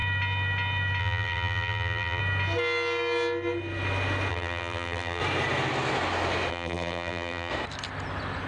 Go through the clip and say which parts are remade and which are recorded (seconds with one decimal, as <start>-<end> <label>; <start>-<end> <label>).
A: 0.0-1.0 recorded; 1.0-2.2 remade; 2.2-4.3 recorded; 4.3-5.2 remade; 5.2-6.5 recorded; 6.5-7.5 remade; 7.5-8.5 recorded